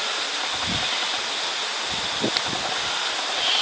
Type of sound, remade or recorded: recorded